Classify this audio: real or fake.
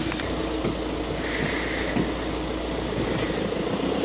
real